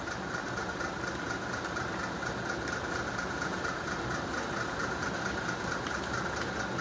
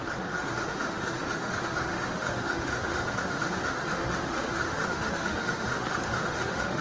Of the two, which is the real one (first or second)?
first